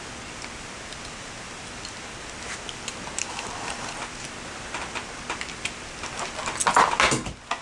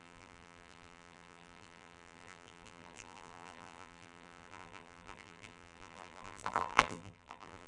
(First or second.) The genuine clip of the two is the first